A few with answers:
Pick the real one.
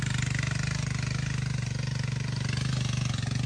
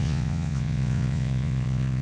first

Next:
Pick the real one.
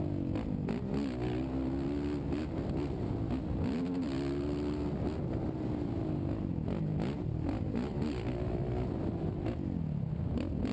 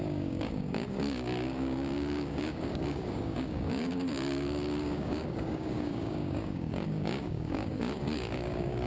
first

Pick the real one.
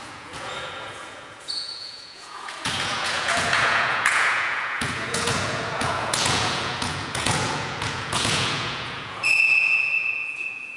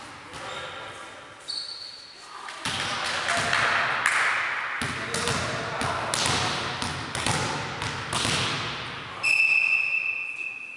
second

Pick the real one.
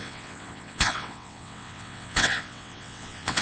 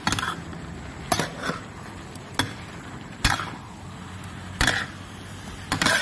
second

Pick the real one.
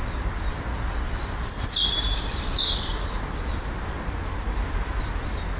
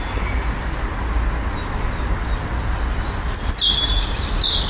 second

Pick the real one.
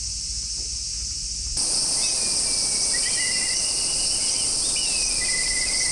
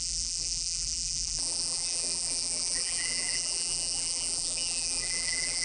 first